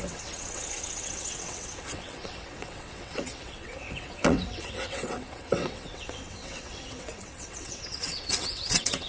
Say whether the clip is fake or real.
fake